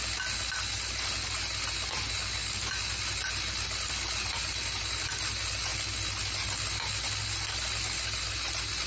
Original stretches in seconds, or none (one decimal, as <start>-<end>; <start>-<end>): 0.0-8.9